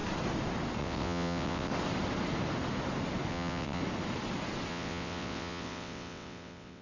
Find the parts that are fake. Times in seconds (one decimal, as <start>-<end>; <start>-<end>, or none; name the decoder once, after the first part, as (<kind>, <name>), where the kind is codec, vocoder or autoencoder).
0.8-1.7 (vocoder, WaveNeXt); 3.3-3.8; 4.7-6.8